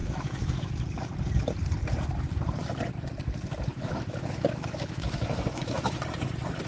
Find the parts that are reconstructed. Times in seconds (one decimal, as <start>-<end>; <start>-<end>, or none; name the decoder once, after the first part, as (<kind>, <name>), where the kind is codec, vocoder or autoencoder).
0.0-0.8 (autoencoder, DAC-VAE); 3.7-6.0